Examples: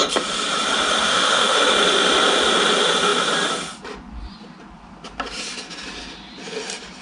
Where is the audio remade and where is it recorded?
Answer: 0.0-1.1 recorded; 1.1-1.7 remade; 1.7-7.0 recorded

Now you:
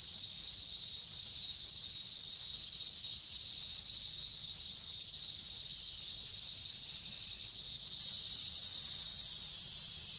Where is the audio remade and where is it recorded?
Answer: 0.0-4.4 recorded; 4.4-5.2 remade; 5.2-6.3 recorded; 6.3-7.4 remade; 7.4-10.2 recorded

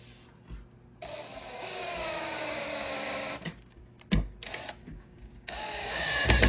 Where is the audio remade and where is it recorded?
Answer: 0.0-1.3 recorded; 1.3-3.8 remade; 3.8-4.8 recorded; 4.8-6.0 remade; 6.0-6.5 recorded

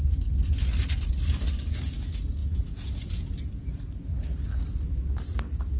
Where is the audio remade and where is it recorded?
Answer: 0.0-2.4 recorded; 2.4-3.3 remade; 3.3-5.8 recorded

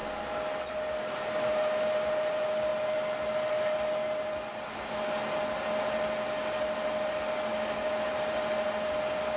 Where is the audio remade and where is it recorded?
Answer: 0.0-7.5 recorded; 7.5-8.1 remade; 8.1-9.4 recorded